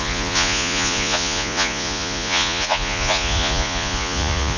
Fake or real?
fake